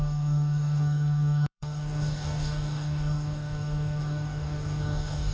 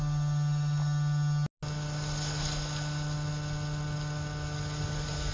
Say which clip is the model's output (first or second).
first